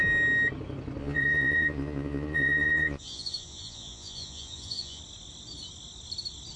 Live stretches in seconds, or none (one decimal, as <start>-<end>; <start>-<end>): 0.0-1.0; 5.0-6.6